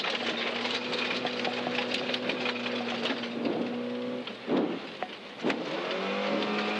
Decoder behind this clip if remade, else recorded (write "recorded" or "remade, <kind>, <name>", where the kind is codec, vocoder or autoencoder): recorded